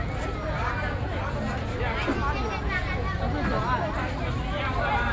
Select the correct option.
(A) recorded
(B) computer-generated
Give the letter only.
A